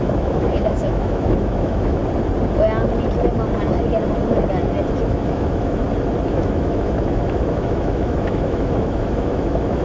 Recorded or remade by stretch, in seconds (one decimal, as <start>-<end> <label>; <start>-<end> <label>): 0.0-2.0 remade; 2.0-5.1 recorded; 5.1-5.8 remade; 5.8-6.3 recorded; 6.3-9.8 remade